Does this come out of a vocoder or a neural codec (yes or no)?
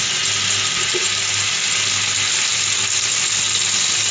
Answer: no